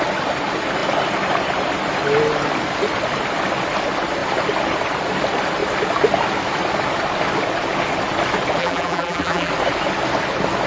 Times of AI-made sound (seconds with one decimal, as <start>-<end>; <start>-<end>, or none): 8.6-9.5